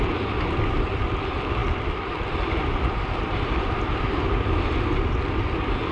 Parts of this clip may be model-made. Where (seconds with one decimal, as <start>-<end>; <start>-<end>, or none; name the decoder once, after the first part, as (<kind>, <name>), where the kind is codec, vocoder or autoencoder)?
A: none